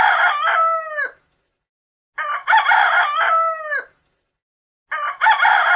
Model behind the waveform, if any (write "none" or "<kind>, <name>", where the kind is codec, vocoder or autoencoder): none